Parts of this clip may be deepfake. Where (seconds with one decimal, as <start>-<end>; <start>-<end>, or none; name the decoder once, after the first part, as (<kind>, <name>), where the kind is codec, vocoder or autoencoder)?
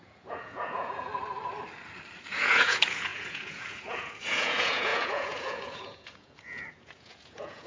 0.0-1.1 (vocoder, Vocos); 2.3-7.7